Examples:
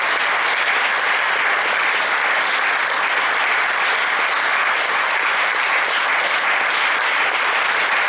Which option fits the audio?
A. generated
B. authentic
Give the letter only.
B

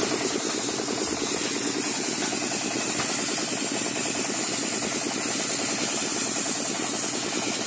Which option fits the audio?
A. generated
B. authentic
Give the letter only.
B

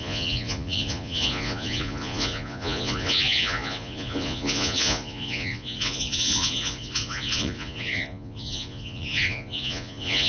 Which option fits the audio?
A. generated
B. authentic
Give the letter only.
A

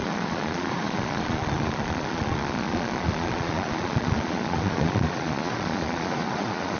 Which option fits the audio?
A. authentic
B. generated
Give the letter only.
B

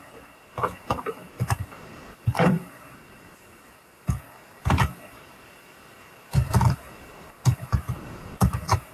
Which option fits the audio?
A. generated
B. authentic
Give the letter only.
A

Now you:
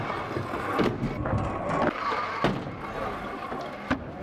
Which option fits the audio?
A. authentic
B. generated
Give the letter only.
A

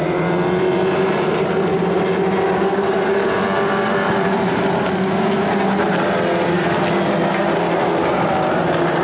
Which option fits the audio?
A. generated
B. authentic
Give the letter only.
B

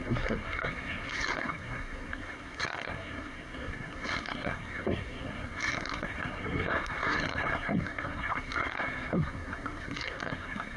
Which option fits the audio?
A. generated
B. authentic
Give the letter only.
A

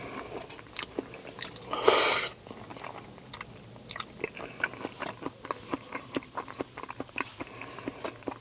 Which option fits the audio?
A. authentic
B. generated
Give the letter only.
A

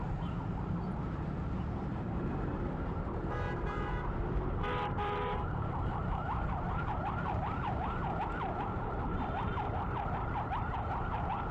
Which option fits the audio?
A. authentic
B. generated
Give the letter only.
B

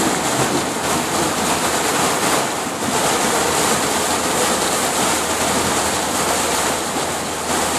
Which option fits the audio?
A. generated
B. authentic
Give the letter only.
B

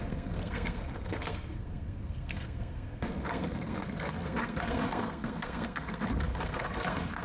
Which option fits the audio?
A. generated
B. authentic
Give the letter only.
A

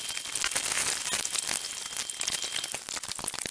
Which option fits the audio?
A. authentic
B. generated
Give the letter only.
A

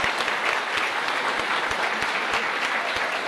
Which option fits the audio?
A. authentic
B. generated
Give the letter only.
A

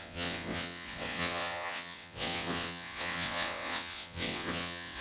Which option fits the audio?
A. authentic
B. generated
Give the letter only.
B